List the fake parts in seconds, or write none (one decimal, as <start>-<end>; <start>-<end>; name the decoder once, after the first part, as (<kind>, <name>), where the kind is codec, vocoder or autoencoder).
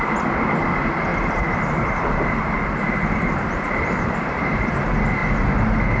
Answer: 1.1-4.7 (vocoder, BigVGAN v2)